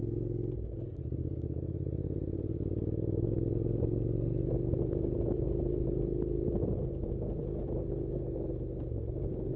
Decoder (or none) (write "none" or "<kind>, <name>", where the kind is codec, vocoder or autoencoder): none